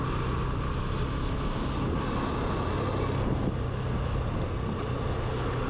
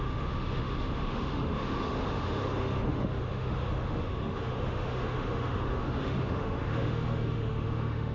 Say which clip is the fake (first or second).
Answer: second